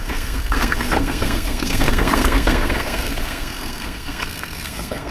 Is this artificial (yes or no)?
yes